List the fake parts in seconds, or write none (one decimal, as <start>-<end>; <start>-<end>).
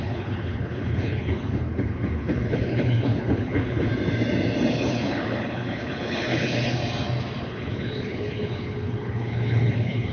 0.0-3.9; 4.7-6.8; 7.4-10.1